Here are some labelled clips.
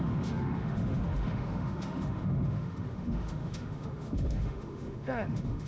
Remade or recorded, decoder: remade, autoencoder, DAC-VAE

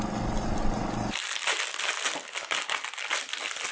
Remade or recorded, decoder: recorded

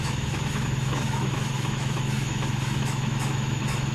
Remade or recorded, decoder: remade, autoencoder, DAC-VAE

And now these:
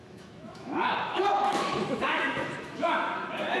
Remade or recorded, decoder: remade, autoencoder, DAC-VAE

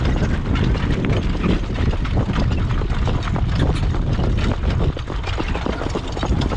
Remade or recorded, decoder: recorded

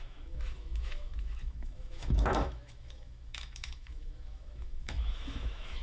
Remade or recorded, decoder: remade, autoencoder, DAC-VAE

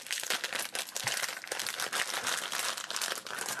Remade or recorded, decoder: recorded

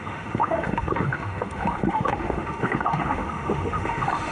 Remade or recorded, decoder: remade, autoencoder, DAC-VAE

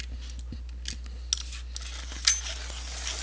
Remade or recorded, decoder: recorded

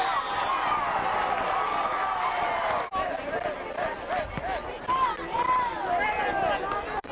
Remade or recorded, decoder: recorded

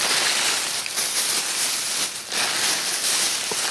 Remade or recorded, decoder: recorded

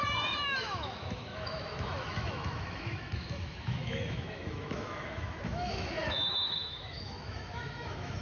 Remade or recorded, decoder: remade, autoencoder, DAC-VAE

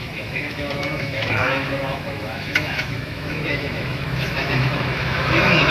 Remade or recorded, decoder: remade, autoencoder, DAC-VAE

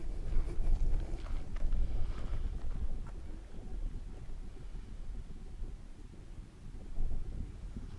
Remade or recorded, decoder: recorded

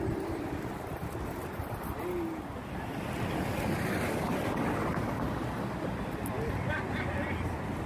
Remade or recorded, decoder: recorded